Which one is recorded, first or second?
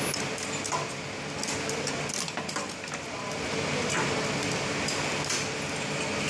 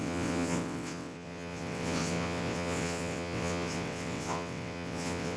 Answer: first